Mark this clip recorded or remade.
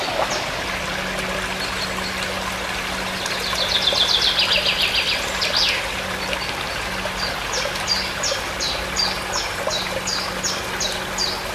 recorded